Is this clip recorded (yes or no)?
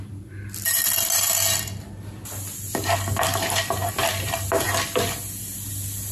yes